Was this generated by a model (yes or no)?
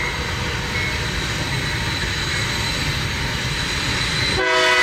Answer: no